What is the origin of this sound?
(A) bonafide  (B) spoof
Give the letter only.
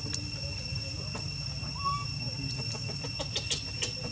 A